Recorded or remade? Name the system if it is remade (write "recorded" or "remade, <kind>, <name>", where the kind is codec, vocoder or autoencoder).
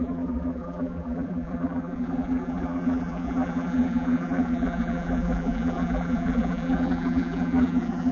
remade, vocoder, BigVGAN v2